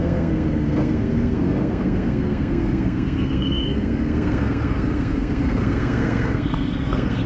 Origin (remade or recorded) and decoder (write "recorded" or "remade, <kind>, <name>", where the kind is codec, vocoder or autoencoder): remade, codec, SNAC